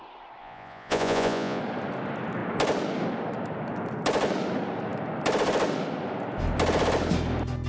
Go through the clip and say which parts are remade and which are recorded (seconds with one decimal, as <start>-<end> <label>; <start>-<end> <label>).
0.0-0.4 recorded; 0.4-1.6 remade; 1.6-7.7 recorded